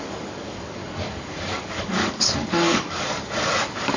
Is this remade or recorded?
remade